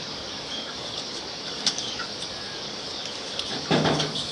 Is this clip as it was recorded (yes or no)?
no